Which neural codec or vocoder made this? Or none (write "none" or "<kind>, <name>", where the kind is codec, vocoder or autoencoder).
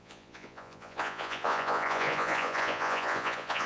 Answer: vocoder, Vocos